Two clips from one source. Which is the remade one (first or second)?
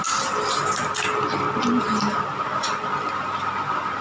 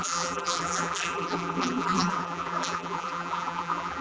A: second